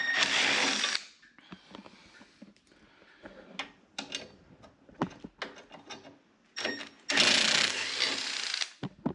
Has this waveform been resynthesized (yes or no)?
no